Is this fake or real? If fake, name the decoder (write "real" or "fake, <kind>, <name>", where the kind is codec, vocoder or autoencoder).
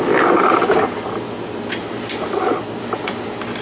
real